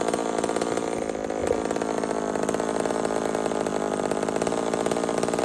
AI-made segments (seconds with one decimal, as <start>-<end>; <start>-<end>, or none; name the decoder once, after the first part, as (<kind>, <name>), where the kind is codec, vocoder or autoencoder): none